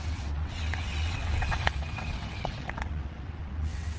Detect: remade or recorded remade